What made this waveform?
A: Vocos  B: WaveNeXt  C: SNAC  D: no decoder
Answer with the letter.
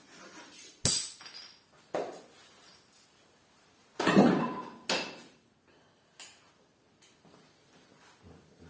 D